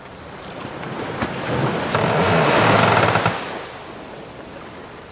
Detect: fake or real real